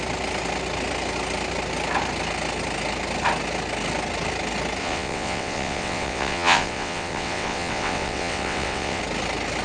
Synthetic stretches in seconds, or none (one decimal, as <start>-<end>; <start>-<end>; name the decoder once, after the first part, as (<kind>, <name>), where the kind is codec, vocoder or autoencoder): 4.8-9.0 (vocoder, WaveNeXt)